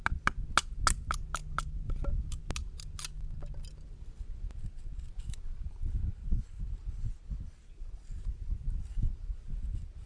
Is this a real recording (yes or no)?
yes